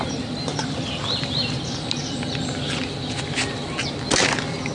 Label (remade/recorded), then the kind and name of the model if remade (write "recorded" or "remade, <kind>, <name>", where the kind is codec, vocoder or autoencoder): recorded